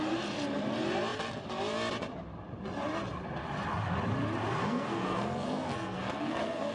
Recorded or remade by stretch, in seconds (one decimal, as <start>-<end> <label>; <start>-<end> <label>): 0.0-4.6 recorded; 4.6-6.7 remade